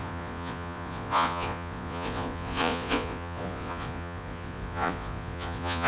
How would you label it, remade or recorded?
remade